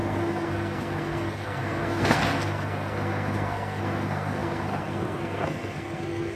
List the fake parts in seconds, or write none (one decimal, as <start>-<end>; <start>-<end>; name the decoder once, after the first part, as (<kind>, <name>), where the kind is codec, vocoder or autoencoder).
0.0-6.4 (codec, SNAC)